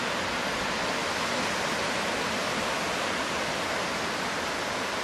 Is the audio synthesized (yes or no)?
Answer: no